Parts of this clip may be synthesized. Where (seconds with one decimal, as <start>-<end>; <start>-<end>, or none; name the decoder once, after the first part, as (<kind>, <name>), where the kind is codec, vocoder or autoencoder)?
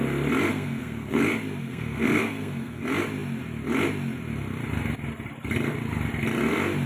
0.5-1.2 (codec, SNAC); 1.6-2.8